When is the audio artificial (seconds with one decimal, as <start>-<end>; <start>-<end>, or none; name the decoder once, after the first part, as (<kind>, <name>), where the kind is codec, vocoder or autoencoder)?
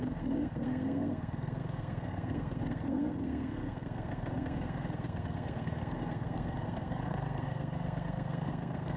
0.0-9.0 (codec, SNAC)